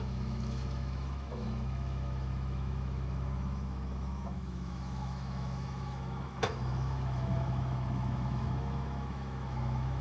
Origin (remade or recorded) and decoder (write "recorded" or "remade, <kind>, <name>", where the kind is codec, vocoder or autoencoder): remade, autoencoder, DAC-VAE